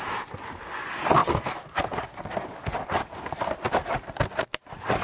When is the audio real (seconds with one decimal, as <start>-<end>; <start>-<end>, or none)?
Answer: 0.0-5.0